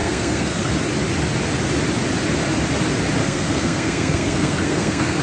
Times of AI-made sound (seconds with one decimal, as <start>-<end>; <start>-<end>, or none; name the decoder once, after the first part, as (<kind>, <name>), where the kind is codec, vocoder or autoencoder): 0.0-0.7 (codec, SNAC); 3.2-5.2